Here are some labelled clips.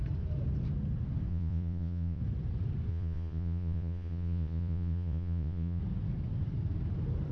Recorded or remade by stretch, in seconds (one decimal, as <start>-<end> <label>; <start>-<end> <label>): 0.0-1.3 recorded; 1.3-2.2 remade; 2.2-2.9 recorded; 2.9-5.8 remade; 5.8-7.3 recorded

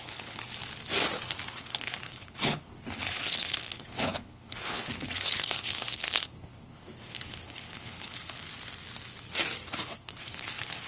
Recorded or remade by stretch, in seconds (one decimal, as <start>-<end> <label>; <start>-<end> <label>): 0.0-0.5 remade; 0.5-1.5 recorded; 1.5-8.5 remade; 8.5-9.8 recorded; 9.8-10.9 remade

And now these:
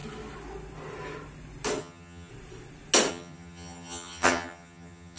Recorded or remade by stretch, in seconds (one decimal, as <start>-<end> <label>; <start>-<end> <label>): 0.0-1.8 recorded; 1.8-2.3 remade; 2.3-3.1 recorded; 3.1-5.2 remade